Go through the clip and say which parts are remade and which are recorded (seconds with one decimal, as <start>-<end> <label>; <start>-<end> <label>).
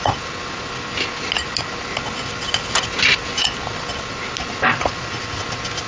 0.0-5.9 recorded